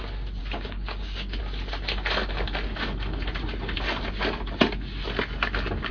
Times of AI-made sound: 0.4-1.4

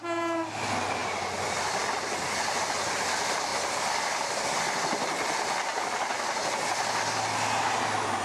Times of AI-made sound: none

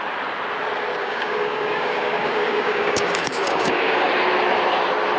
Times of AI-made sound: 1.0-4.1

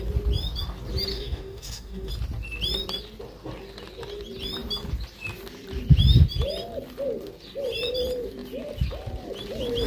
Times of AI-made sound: 1.1-2.1

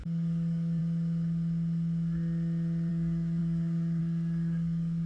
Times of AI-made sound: 0.0-0.8; 2.9-5.1

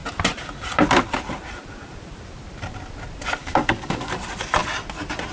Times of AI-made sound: 3.4-4.1